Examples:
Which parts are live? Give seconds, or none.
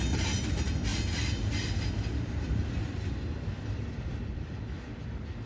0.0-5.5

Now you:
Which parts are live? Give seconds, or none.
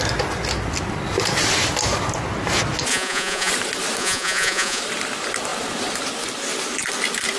0.0-2.9; 3.5-4.0; 4.8-7.4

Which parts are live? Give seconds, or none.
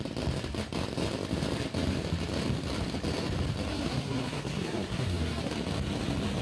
0.0-3.7; 5.5-6.4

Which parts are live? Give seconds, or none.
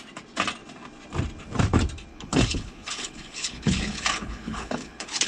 0.0-2.1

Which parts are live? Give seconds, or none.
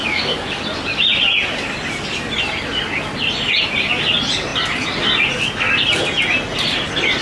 0.6-7.2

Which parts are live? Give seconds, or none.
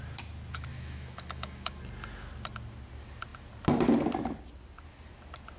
0.0-0.7; 1.8-5.6